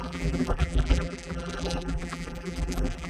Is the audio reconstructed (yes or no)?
yes